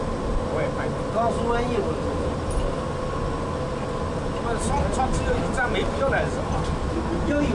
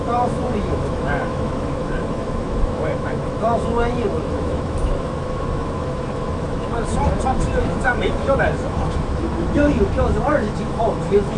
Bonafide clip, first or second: first